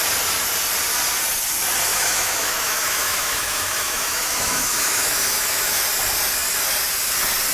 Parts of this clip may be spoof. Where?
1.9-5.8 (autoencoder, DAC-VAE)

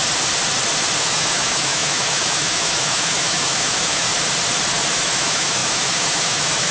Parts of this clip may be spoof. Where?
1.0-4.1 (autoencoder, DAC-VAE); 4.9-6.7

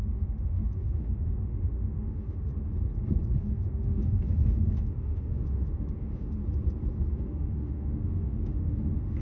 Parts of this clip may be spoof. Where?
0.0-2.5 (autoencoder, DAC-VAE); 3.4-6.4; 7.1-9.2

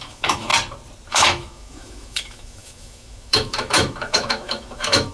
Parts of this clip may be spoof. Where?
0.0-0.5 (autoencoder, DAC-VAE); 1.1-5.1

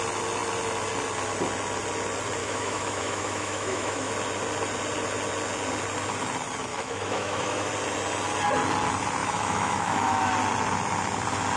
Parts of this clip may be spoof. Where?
2.4-4.1 (autoencoder, DAC-VAE); 6.7-7.7; 9.2-10.3